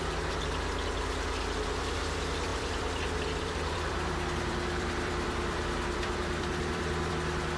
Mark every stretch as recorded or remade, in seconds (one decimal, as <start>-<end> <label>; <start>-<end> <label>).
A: 0.0-2.5 recorded; 2.5-7.1 remade; 7.1-7.6 recorded